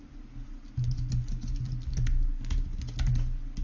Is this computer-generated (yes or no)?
no